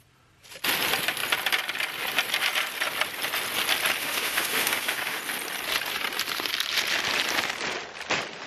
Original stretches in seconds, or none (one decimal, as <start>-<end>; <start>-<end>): 0.0-4.0; 5.2-8.5

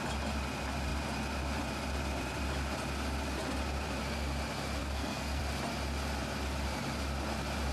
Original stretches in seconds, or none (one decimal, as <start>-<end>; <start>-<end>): 0.0-4.8; 5.4-7.7

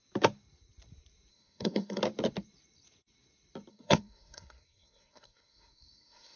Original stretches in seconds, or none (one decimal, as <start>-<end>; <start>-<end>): 0.0-1.3; 2.0-3.7

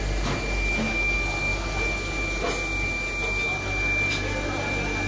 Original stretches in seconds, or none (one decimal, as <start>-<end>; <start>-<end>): 0.0-5.1

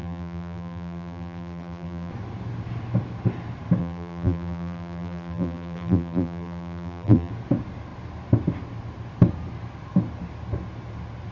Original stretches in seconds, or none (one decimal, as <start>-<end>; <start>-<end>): 2.1-3.8; 7.3-11.3

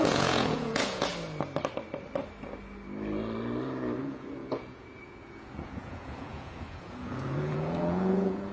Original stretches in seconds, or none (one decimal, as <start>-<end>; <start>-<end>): 1.1-4.0

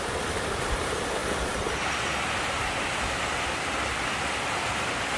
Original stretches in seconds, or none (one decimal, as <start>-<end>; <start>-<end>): 0.0-5.2

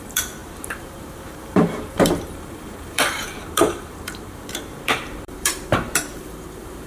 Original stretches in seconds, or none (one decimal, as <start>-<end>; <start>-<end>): none